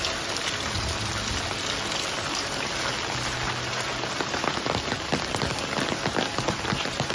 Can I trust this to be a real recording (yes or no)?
yes